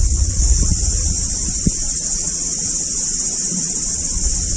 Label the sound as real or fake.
fake